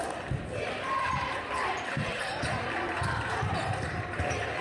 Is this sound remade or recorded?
remade